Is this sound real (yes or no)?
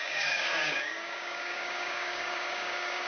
no